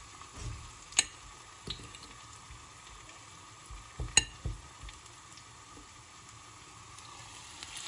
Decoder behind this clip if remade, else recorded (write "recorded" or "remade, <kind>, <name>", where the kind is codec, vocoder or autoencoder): recorded